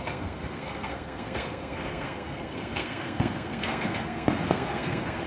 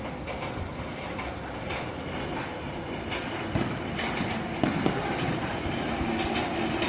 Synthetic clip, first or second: first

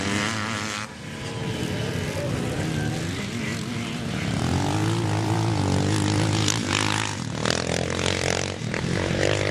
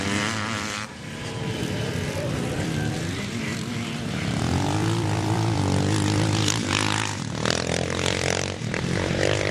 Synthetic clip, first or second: second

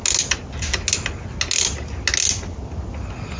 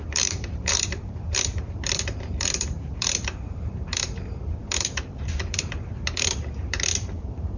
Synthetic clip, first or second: second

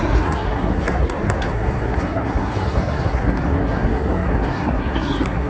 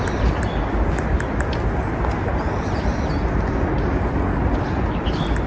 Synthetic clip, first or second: first